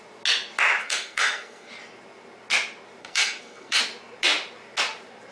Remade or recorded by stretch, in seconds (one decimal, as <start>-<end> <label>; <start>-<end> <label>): 0.0-0.8 recorded; 0.8-1.7 remade; 1.7-3.0 recorded; 3.0-3.8 remade; 3.8-5.3 recorded